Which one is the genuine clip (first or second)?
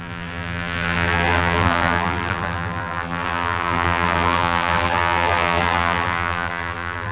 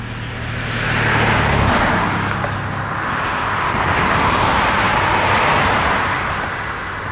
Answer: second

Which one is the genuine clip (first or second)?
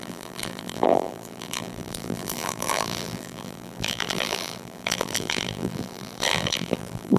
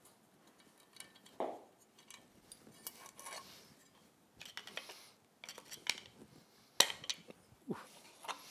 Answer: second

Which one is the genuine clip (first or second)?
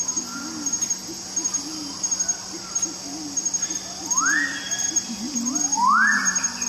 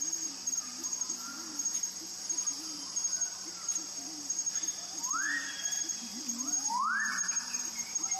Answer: first